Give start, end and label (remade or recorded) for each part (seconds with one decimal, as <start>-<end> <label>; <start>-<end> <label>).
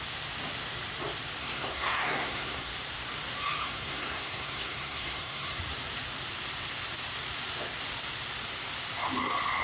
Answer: 0.0-1.4 recorded; 1.4-2.7 remade; 2.7-3.6 recorded; 3.6-5.6 remade; 5.6-9.6 recorded